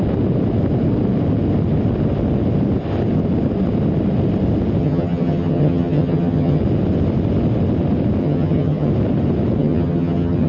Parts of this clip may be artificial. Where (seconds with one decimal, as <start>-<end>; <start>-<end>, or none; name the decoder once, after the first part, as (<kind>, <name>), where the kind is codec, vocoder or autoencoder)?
4.8-6.6 (vocoder, HiFi-GAN); 8.2-8.9; 9.6-10.5